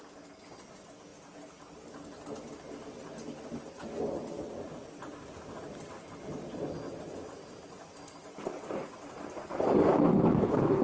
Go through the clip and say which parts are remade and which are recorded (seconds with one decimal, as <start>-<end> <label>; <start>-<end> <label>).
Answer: 0.0-9.9 recorded; 9.9-10.8 remade